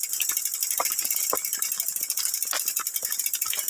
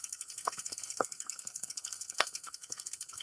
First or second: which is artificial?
second